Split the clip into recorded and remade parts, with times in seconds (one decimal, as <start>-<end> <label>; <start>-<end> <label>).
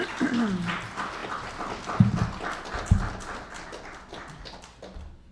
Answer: 0.0-5.3 recorded